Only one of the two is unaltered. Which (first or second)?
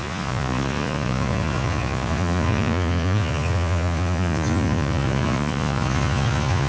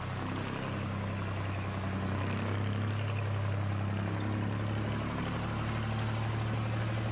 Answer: second